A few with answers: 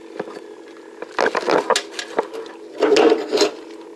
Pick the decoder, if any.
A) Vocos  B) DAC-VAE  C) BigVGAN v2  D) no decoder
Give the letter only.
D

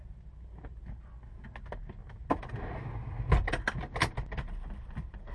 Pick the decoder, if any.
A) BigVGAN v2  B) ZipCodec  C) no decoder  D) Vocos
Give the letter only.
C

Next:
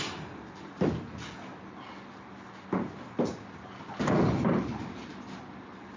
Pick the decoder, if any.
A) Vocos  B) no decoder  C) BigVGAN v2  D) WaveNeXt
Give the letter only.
B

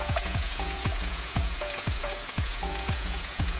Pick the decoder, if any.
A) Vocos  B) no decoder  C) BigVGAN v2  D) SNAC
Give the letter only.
A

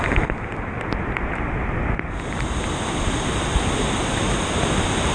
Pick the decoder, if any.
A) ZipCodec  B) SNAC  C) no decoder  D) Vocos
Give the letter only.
C